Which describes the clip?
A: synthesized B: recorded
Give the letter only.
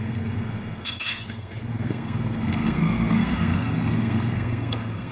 A